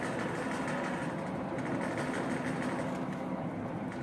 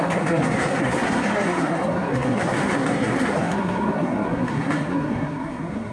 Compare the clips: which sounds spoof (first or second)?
second